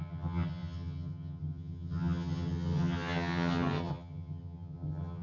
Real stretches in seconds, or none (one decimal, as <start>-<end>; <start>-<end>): none